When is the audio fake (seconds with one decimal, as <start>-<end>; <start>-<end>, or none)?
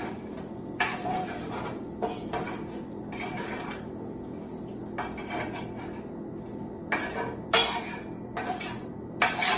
none